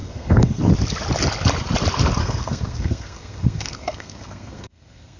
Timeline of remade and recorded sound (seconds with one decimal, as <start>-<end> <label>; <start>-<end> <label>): 0.0-0.7 remade; 0.7-2.2 recorded; 2.2-5.2 remade